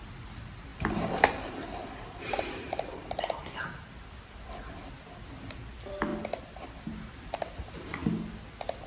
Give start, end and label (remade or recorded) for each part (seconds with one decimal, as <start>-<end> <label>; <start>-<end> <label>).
0.0-0.7 recorded; 0.7-3.8 remade; 3.8-8.9 recorded